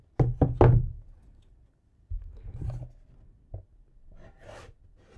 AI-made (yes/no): no